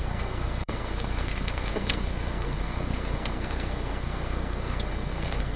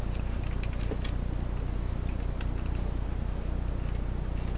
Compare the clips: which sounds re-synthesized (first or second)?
first